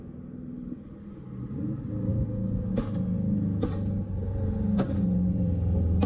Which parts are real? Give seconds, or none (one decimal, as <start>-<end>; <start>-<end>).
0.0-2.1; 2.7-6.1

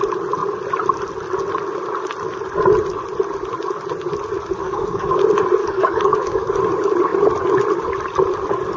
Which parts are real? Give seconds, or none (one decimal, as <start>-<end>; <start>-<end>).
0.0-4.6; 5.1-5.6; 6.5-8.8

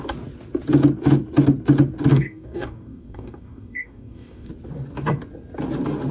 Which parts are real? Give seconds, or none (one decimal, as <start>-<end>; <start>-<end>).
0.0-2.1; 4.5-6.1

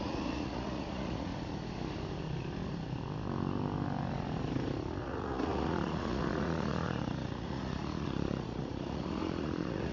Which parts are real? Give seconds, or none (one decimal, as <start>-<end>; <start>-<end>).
1.3-5.0

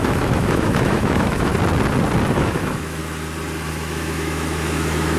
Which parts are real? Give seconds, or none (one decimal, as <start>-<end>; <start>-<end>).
1.5-2.3; 3.0-3.7

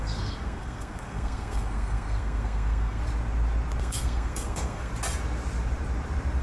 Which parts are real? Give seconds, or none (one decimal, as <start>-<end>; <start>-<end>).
3.0-3.8; 4.9-6.4

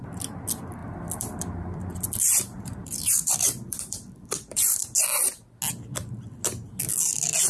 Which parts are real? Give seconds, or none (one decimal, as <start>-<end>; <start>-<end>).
0.0-0.8; 4.8-7.5

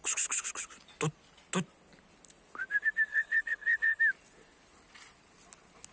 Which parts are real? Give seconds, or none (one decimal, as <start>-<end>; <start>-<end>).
0.0-3.1; 4.0-5.9